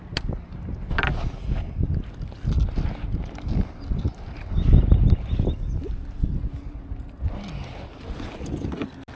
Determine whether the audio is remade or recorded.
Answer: recorded